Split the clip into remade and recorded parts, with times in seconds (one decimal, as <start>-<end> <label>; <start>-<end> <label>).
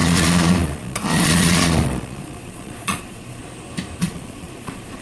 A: 0.0-3.4 remade; 3.4-4.0 recorded; 4.0-5.0 remade